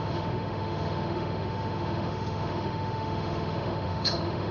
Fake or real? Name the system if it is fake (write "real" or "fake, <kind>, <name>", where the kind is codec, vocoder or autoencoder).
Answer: fake, autoencoder, DAC-VAE